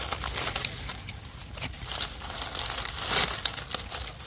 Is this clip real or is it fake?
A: real